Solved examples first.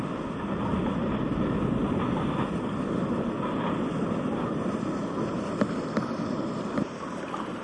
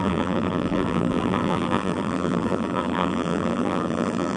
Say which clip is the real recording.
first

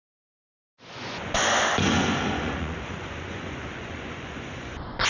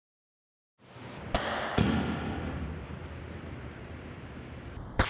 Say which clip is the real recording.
second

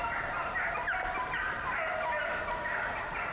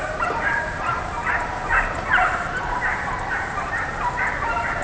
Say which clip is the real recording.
first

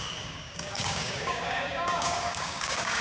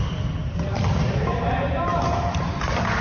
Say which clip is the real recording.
second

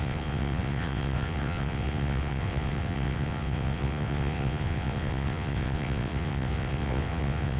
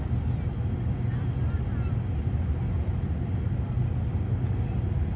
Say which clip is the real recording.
second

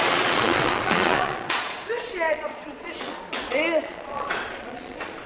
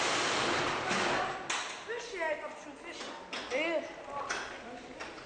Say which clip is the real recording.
second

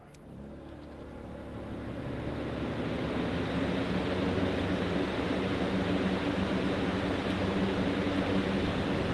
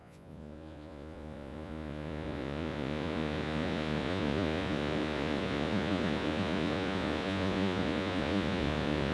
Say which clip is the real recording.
first